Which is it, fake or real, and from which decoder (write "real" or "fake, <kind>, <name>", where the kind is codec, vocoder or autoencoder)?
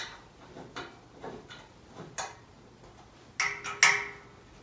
real